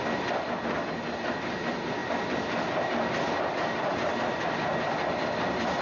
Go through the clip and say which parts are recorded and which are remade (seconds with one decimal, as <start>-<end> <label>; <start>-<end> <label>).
0.0-5.8 recorded